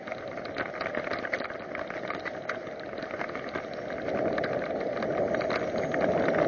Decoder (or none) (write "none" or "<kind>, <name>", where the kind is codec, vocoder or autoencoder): none